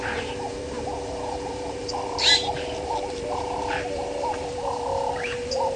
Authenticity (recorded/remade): remade